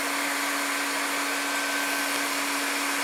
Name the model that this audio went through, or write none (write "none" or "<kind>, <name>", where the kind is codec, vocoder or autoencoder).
none